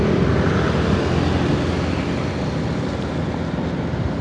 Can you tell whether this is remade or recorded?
recorded